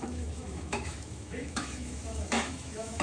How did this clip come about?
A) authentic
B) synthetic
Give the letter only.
B